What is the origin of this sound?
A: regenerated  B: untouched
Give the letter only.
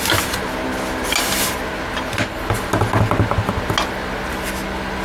B